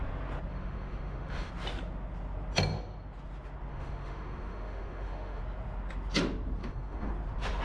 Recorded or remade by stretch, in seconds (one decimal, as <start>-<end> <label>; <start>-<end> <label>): 0.0-0.5 recorded; 0.5-1.5 remade; 1.5-3.7 recorded; 3.7-5.4 remade; 5.4-6.6 recorded; 6.6-7.1 remade; 7.1-7.6 recorded